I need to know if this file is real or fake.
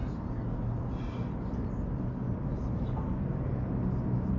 real